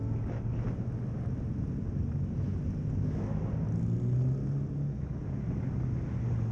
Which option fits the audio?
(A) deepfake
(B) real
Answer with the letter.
B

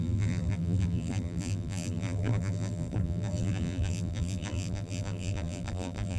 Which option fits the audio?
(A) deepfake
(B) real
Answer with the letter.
A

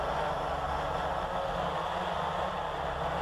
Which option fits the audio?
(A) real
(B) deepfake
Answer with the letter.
A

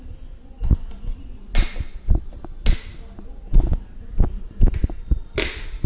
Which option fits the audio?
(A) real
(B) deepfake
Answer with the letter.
A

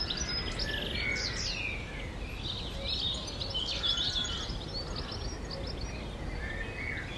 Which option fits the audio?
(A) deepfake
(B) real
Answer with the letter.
B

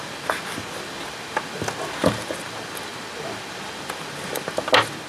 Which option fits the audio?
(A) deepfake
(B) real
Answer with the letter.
B